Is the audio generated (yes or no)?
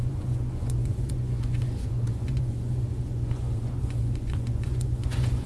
yes